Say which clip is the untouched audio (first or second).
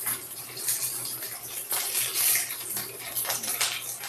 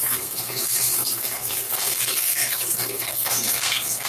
first